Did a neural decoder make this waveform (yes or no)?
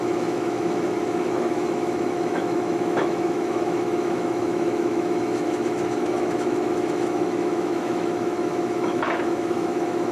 yes